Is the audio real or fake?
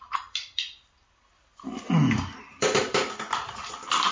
real